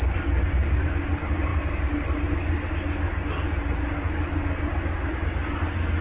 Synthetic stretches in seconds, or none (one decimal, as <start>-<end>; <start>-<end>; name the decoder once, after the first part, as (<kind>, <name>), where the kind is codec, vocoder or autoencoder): none